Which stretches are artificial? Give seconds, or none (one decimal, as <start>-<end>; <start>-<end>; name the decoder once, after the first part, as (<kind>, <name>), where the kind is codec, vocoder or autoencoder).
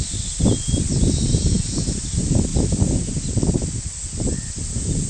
none